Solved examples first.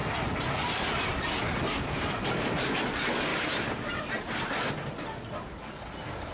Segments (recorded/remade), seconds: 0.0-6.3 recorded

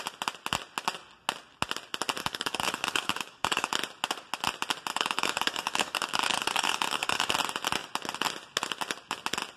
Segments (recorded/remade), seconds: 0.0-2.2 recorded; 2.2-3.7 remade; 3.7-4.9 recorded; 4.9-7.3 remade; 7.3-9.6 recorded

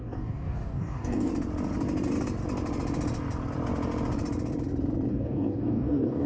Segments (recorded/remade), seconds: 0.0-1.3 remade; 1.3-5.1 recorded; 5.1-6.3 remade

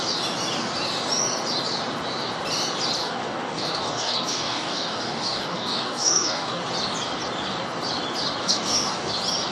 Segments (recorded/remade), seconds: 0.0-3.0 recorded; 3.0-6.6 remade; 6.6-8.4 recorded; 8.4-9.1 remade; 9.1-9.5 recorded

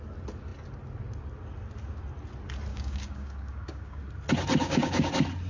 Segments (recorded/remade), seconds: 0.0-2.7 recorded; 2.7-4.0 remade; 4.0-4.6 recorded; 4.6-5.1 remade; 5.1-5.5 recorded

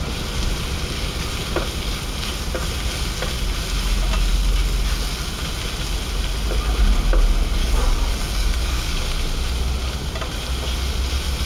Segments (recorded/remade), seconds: 0.0-7.6 recorded; 7.6-9.0 remade; 9.0-11.5 recorded

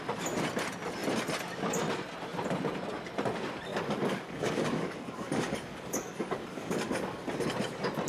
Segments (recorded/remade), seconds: 0.0-3.7 recorded; 3.7-7.3 remade; 7.3-8.1 recorded

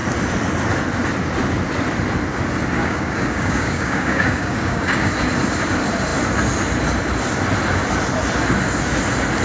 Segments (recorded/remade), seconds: 0.0-2.8 recorded; 2.8-5.1 remade; 5.1-9.4 recorded